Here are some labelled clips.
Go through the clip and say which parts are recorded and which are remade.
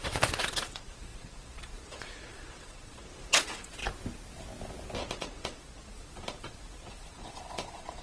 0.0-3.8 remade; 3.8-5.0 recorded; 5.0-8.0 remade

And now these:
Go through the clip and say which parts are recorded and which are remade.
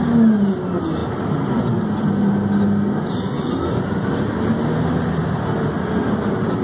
0.0-6.6 recorded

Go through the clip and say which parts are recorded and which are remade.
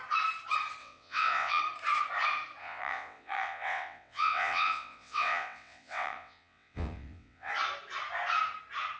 0.0-0.8 recorded; 0.8-1.6 remade; 1.6-2.6 recorded; 2.6-7.5 remade; 7.5-9.0 recorded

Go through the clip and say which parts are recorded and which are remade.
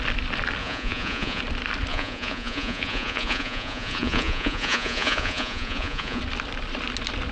0.0-0.6 recorded; 0.6-1.4 remade; 1.4-1.9 recorded; 1.9-6.2 remade; 6.2-7.3 recorded